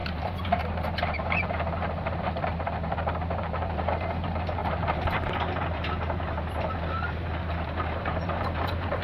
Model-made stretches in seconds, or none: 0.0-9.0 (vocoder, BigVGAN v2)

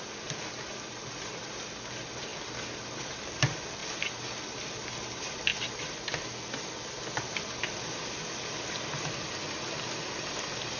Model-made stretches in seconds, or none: none